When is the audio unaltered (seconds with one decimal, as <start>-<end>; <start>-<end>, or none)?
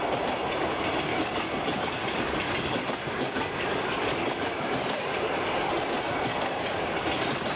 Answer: 0.0-1.1; 5.7-6.3; 6.8-7.6